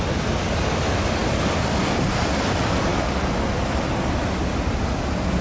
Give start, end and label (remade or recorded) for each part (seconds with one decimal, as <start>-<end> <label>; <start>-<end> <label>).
0.0-5.4 recorded